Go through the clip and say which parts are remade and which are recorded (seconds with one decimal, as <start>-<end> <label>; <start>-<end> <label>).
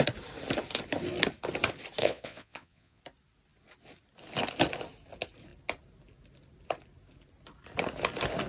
0.0-2.0 recorded; 2.0-3.0 remade; 3.0-8.5 recorded